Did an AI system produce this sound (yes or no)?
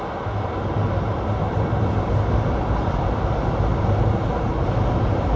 no